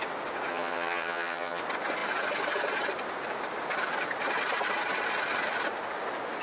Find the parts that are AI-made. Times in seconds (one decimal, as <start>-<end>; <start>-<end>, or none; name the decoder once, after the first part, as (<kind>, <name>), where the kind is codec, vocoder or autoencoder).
0.5-1.6 (vocoder, HiFi-GAN)